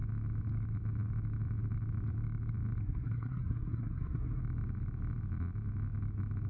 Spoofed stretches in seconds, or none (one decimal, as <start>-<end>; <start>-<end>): 2.8-4.4